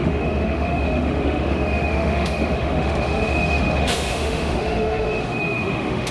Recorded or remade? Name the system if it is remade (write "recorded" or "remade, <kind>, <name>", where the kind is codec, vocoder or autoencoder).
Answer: remade, autoencoder, DAC-VAE